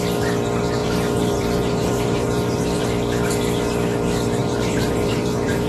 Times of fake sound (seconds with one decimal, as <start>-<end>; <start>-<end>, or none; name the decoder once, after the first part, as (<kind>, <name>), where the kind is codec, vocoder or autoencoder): 0.8-2.8 (vocoder, BigVGAN v2); 4.4-5.7